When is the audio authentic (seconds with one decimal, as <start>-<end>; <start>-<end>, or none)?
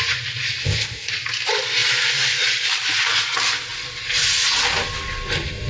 0.0-0.6; 1.1-5.7